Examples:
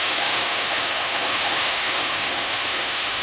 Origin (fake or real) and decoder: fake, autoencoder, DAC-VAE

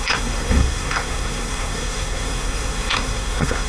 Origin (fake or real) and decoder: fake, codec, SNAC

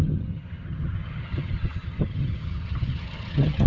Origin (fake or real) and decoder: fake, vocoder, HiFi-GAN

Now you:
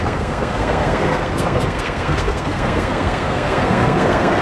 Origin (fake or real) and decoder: fake, codec, SNAC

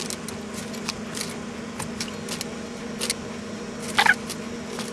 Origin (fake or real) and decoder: real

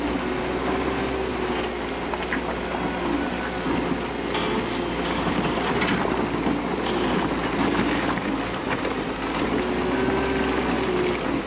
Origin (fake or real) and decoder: real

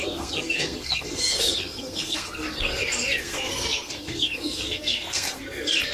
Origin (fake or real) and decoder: fake, codec, SNAC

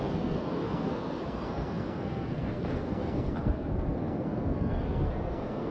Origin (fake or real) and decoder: fake, codec, SNAC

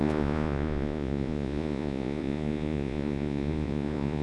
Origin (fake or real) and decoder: fake, vocoder, Vocos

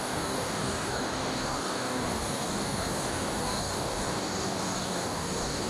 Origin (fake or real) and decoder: fake, codec, DAC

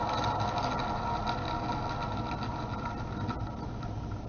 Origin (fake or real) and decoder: real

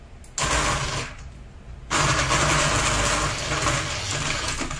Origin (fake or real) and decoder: real